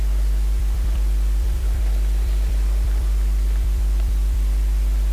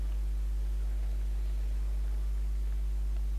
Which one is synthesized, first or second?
first